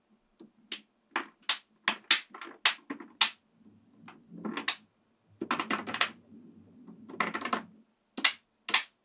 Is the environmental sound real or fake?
real